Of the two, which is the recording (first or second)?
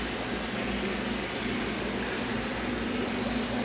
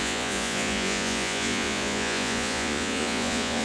first